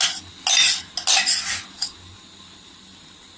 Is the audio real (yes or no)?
yes